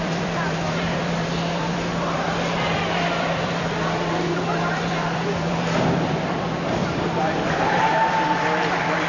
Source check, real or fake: fake